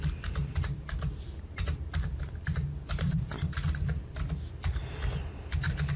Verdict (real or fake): real